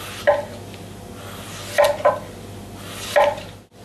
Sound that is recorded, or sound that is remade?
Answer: recorded